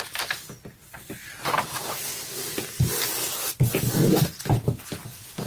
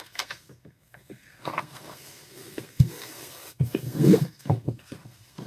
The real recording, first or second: first